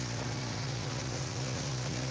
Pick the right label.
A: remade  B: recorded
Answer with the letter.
A